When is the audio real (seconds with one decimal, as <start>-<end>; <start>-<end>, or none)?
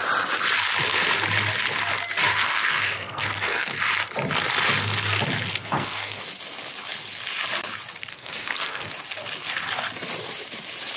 0.0-2.3; 3.8-5.6; 6.2-8.1; 8.9-11.0